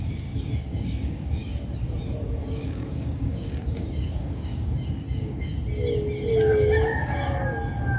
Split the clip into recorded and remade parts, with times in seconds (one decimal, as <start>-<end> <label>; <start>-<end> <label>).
0.0-1.5 remade; 1.5-2.3 recorded; 2.3-5.5 remade; 5.5-8.0 recorded